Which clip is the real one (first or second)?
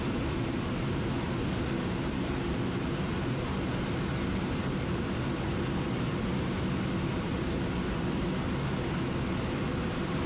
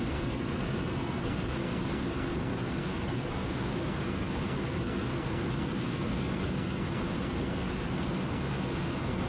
first